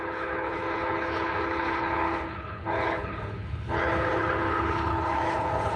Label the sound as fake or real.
fake